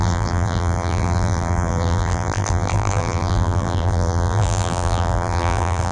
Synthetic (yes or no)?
yes